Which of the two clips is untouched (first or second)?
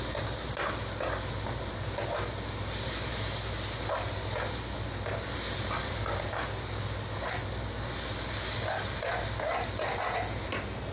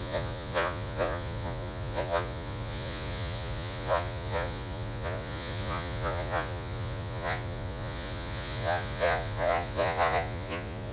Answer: first